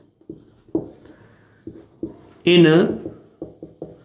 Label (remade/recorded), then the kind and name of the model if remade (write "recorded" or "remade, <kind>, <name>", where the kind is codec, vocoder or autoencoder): recorded